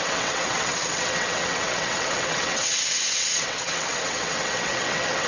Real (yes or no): no